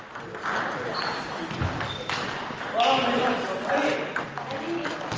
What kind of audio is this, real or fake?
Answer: real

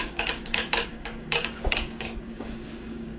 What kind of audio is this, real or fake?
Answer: fake